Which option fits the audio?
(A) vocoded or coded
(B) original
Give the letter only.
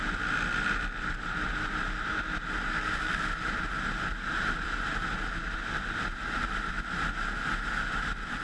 B